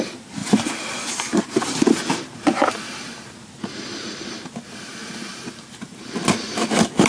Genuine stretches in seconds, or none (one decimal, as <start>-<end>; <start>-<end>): 0.0-0.4; 2.2-5.0

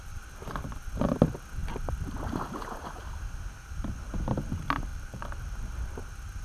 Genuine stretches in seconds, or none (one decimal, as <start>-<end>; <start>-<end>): 0.0-4.9; 5.4-6.4